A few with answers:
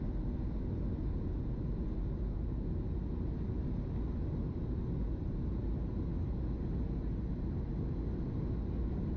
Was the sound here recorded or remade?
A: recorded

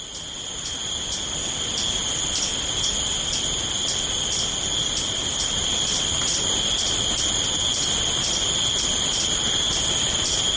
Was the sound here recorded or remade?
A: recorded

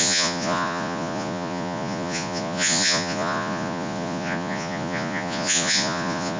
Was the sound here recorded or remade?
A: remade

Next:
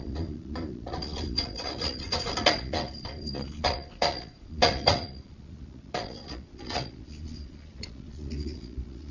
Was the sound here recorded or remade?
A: remade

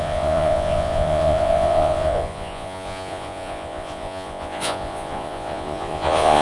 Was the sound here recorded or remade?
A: remade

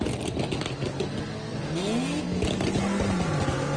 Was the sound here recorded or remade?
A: recorded